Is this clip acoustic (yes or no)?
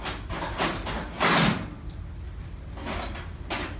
yes